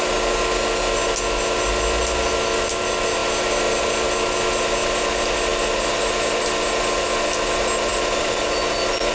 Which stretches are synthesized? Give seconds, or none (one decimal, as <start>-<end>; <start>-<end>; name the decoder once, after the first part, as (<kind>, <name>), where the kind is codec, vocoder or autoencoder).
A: 7.9-8.4 (vocoder, BigVGAN v2)